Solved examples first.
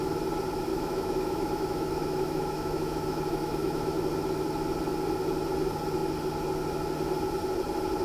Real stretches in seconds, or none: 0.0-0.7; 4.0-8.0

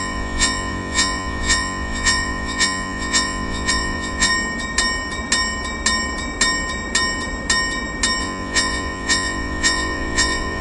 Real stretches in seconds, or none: 4.3-8.2

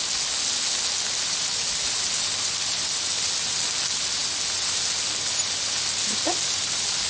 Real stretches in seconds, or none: 0.0-7.1